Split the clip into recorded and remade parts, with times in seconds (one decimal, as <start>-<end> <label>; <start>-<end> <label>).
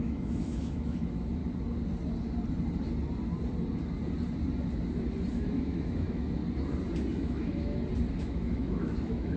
0.0-1.4 remade; 1.4-5.3 recorded; 5.3-6.4 remade; 6.4-7.1 recorded; 7.1-7.7 remade; 7.7-8.2 recorded; 8.2-9.4 remade